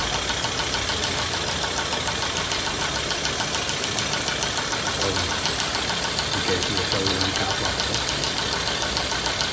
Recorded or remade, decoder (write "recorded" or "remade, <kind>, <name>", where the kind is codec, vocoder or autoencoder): recorded